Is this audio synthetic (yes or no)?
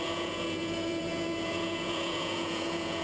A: yes